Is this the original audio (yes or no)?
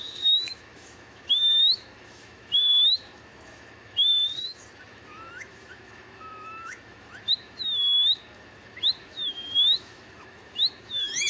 no